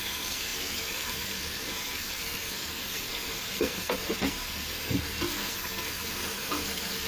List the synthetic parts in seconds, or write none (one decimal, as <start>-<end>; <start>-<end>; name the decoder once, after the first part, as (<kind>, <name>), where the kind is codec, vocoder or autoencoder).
0.0-7.1 (codec, SNAC)